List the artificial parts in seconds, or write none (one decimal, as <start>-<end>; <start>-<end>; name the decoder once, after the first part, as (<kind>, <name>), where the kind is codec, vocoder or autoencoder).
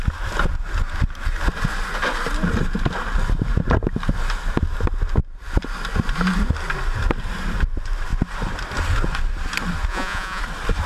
9.9-10.4 (vocoder, Vocos)